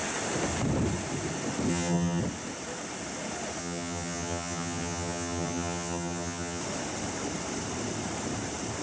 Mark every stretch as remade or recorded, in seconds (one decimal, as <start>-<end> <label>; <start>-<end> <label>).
0.0-1.7 recorded; 1.7-2.2 remade; 2.2-3.6 recorded; 3.6-6.6 remade; 6.6-8.8 recorded